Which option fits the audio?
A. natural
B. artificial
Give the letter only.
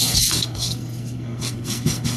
B